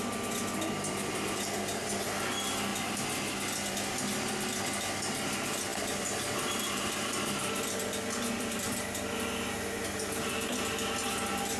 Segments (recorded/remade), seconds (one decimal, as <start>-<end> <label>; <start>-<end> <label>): 0.0-5.7 recorded; 5.7-8.8 remade; 8.8-11.6 recorded